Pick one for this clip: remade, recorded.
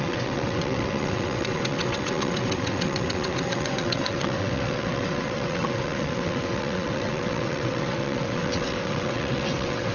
remade